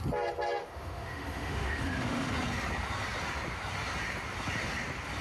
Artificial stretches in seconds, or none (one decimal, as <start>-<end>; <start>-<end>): 0.6-2.3